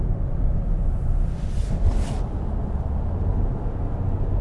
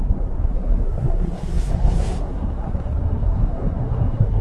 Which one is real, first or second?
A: first